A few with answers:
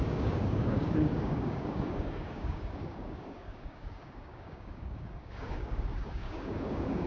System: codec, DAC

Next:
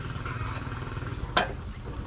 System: none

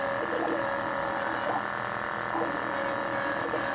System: none